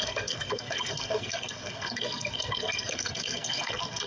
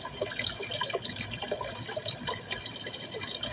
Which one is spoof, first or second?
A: first